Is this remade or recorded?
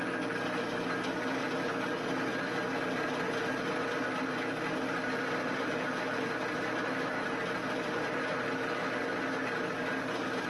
recorded